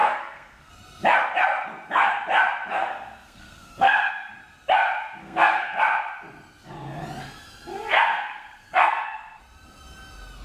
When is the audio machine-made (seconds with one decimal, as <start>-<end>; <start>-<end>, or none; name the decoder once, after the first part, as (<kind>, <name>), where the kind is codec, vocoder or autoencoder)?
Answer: 0.0-0.7 (codec, SNAC); 2.8-4.3; 5.2-5.8; 7.7-9.4